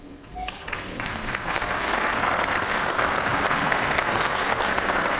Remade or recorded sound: remade